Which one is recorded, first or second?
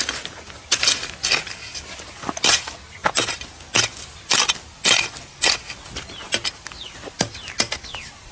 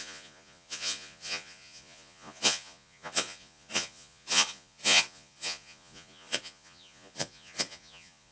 first